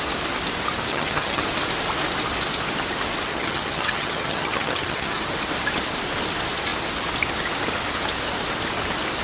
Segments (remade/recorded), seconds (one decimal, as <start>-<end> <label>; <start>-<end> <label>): 0.0-0.9 recorded; 0.9-1.4 remade; 1.4-3.3 recorded; 3.3-5.2 remade; 5.2-9.2 recorded